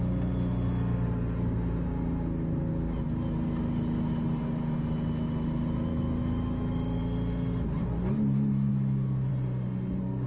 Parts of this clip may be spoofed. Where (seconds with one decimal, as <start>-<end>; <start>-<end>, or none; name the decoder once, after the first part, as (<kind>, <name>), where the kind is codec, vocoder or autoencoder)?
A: 5.9-7.0 (autoencoder, DAC-VAE); 8.7-9.3